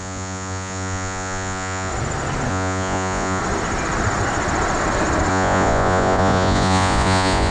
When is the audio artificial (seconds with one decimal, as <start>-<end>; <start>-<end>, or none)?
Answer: 0.0-1.9; 2.5-3.4; 5.3-7.5